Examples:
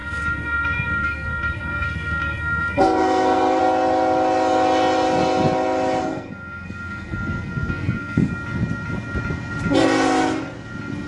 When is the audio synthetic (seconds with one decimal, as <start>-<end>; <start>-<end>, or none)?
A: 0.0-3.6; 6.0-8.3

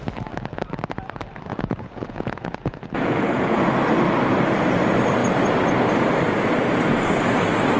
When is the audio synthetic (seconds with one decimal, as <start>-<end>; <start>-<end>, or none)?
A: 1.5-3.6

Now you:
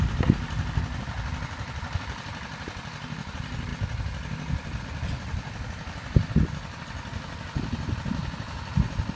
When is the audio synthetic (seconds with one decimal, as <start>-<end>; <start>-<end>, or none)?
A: none

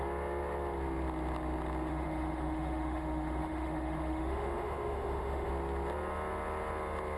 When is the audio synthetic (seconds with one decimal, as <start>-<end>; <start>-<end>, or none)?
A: 1.9-5.5